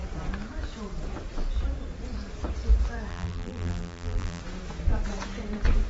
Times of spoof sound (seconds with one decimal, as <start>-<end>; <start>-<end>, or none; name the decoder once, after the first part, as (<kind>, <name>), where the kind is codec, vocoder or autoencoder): 3.1-4.4 (vocoder, BigVGAN v2)